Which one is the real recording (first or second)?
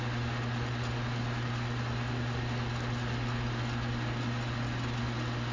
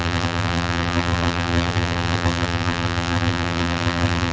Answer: first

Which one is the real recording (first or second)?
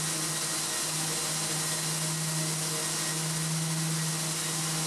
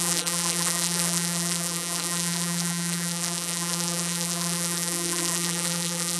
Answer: first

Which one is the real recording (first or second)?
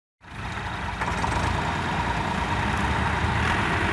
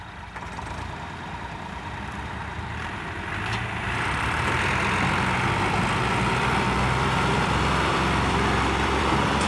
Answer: first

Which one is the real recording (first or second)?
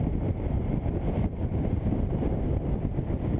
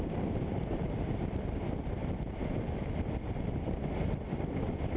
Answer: first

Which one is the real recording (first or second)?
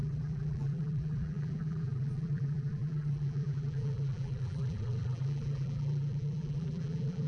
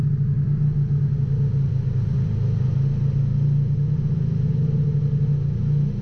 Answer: second